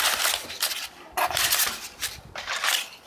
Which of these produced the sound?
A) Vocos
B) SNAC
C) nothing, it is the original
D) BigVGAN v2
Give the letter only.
C